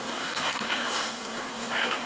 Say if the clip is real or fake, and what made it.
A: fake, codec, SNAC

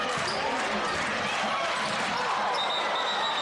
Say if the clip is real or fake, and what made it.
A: real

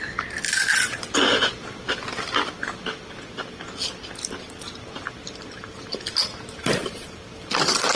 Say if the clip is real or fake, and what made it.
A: real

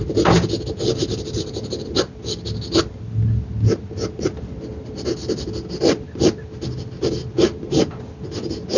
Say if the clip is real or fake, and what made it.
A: real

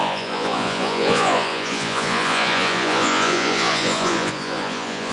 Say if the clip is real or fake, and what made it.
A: fake, vocoder, Vocos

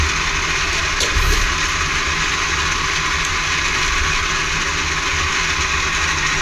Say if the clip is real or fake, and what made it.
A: real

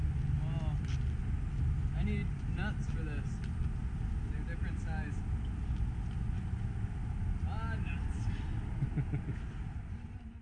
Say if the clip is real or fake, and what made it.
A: real